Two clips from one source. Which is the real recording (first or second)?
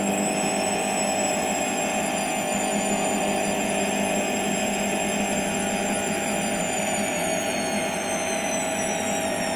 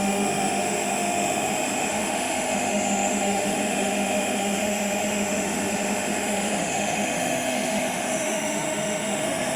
first